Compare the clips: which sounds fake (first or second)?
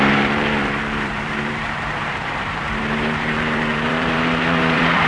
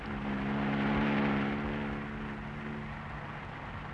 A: first